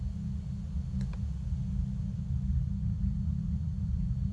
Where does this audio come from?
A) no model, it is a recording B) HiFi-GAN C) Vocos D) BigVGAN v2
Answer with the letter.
A